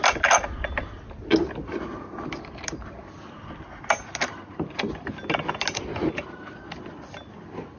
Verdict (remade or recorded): recorded